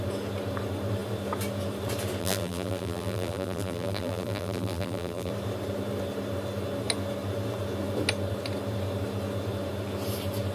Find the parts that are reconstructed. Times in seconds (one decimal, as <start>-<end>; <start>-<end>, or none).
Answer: 2.2-5.3